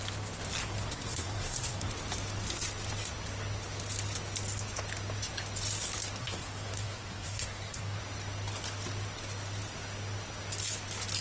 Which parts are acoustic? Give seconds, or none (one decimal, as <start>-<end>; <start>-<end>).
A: 0.0-0.6; 1.9-6.2; 8.0-11.2